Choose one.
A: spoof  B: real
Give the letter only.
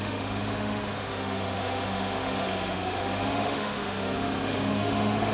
A